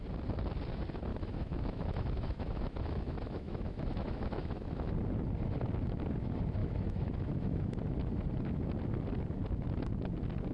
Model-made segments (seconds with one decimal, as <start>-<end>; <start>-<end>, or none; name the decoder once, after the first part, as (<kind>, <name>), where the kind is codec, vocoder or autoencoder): 1.1-4.9 (autoencoder, DAC-VAE); 6.6-7.8